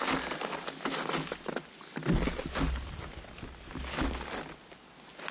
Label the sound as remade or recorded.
recorded